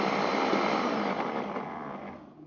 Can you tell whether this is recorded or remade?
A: recorded